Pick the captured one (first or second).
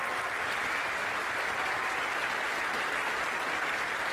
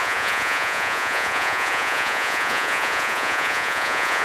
first